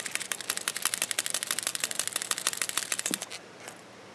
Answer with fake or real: real